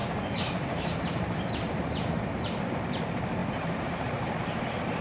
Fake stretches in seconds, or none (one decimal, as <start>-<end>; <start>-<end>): 0.0-3.0; 3.4-4.3